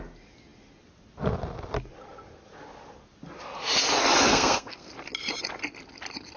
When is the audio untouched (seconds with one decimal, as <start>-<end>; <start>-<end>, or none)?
0.0-4.3; 4.9-6.4